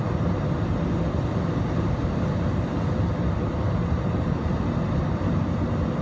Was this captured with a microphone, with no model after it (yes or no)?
yes